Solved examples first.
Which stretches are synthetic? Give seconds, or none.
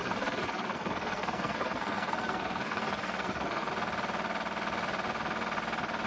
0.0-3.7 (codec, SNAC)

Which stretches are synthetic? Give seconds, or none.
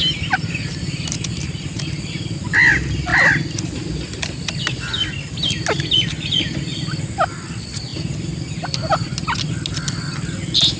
none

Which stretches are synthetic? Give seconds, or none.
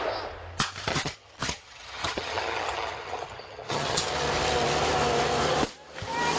0.9-4.0 (vocoder, HiFi-GAN)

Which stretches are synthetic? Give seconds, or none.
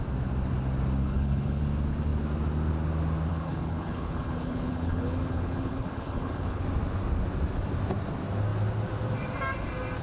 1.0-1.6 (codec, HILCodec); 3.3-6.6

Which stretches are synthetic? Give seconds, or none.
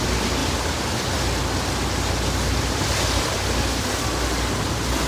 none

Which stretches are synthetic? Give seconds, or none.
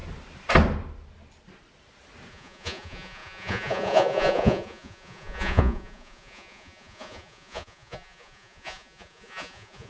2.3-9.9 (vocoder, Vocos)